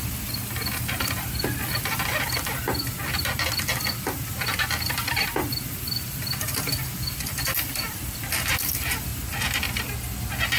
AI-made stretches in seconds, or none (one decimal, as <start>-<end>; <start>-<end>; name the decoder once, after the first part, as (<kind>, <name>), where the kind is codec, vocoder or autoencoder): 0.0-9.1 (vocoder, BigVGAN v2)